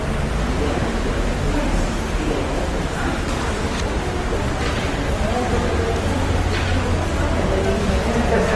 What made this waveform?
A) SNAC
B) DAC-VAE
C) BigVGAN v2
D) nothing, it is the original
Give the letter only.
D